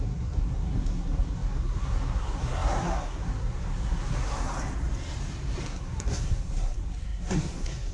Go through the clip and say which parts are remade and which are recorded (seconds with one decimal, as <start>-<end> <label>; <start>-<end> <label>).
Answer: 0.0-4.5 remade; 4.5-5.6 recorded; 5.6-7.9 remade